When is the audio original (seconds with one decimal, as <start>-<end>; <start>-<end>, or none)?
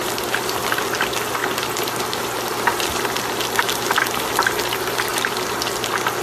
0.0-6.2